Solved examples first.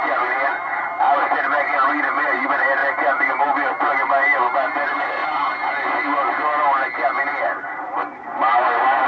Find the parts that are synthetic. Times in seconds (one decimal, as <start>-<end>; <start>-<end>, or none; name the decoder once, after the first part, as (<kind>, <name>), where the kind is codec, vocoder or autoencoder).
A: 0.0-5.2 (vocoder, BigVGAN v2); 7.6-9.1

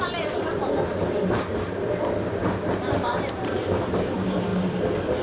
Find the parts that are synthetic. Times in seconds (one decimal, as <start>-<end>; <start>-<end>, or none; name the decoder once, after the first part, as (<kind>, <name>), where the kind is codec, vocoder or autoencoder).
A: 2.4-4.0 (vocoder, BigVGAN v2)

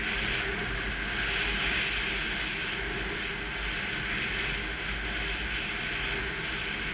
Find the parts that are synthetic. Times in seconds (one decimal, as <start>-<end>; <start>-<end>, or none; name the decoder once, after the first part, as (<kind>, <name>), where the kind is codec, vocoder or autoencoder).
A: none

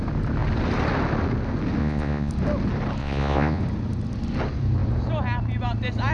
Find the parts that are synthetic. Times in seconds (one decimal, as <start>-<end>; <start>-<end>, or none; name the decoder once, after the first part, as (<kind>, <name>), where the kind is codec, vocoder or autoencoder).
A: 1.8-2.3 (vocoder, Vocos); 3.0-3.6

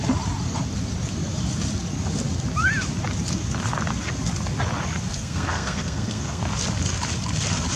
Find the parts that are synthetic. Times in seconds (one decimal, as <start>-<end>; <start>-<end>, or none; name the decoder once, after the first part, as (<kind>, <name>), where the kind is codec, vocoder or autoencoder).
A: 5.1-6.4 (codec, SNAC)

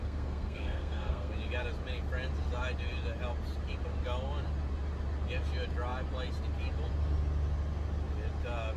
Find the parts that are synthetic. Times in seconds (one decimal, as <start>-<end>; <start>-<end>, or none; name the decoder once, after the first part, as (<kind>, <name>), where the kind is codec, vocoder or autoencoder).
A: 0.0-1.3 (codec, SNAC)